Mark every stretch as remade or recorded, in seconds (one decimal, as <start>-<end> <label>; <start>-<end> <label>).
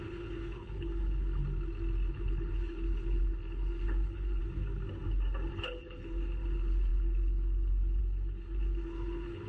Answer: 0.0-1.4 remade; 1.4-2.1 recorded; 2.1-4.4 remade; 4.4-5.5 recorded; 5.5-9.5 remade